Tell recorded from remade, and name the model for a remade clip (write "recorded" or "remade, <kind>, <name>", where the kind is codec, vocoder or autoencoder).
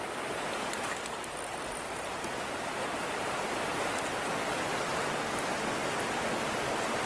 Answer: recorded